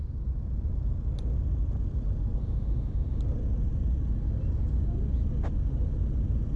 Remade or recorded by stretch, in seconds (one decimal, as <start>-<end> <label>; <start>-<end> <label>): 0.0-2.4 recorded; 2.4-3.2 remade; 3.2-6.6 recorded